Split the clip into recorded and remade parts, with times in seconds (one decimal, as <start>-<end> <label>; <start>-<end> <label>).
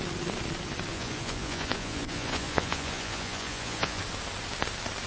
0.0-0.9 recorded; 0.9-4.0 remade; 4.0-5.1 recorded